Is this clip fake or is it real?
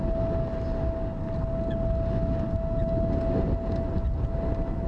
real